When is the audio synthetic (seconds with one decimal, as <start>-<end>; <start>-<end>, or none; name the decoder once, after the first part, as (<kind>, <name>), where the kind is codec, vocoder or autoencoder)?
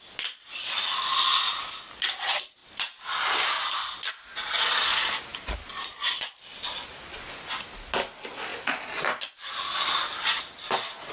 2.6-4.1 (vocoder, BigVGAN v2); 8.5-9.6